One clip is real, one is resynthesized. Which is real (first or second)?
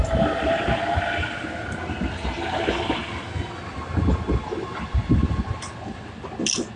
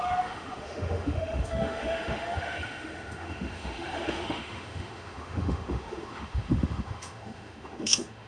first